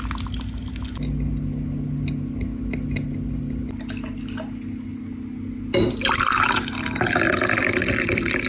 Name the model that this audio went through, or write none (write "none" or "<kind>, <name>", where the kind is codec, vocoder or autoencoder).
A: none